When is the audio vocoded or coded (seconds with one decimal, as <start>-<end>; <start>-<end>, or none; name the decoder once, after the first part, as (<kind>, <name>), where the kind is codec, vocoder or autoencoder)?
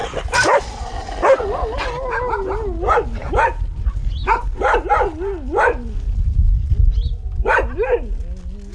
none